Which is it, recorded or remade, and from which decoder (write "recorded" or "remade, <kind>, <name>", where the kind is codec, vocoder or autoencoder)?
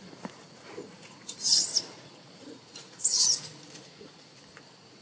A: remade, vocoder, Vocos